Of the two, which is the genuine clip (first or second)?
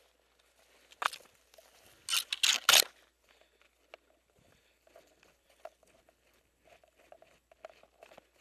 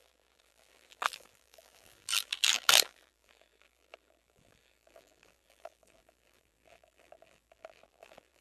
first